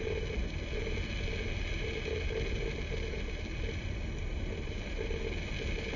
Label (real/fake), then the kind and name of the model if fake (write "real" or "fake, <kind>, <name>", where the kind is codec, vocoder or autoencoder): real